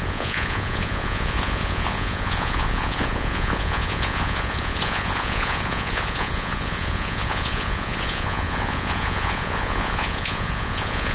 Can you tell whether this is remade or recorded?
remade